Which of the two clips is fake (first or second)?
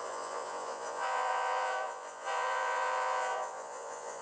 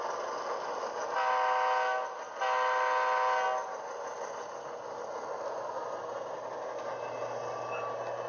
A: first